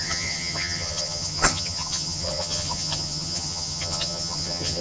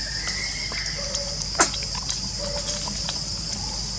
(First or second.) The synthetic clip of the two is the first